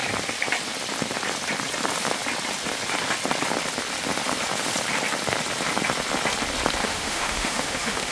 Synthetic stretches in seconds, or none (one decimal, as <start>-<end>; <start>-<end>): 6.8-8.1